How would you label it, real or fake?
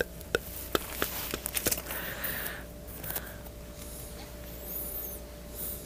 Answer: real